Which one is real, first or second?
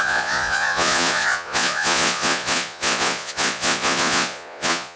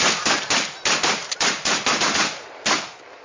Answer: second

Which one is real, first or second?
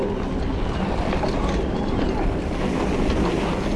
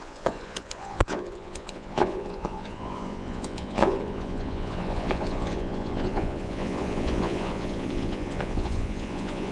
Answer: first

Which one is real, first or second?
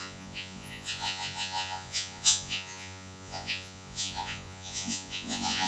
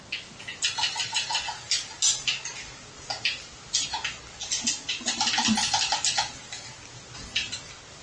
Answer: second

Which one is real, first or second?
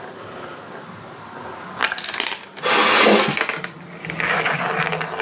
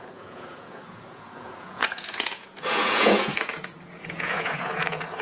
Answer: first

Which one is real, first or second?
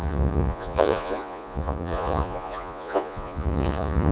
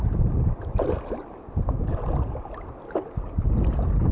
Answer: second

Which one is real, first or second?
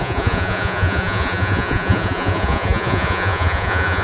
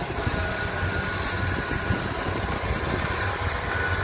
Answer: second